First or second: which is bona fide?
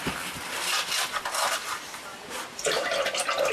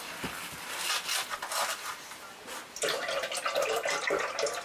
second